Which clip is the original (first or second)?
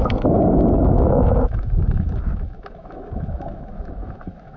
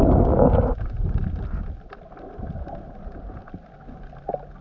second